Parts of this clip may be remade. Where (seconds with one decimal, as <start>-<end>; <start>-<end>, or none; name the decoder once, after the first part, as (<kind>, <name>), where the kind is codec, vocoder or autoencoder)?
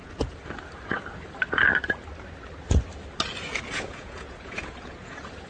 0.0-0.4 (vocoder, Vocos); 3.7-5.5